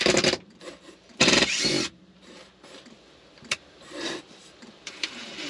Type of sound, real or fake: fake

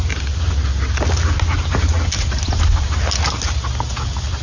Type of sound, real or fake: real